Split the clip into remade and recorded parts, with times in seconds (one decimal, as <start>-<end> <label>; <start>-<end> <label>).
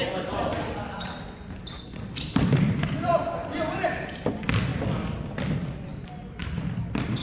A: 0.0-4.7 remade; 4.7-5.4 recorded; 5.4-5.9 remade; 5.9-6.4 recorded; 6.4-7.2 remade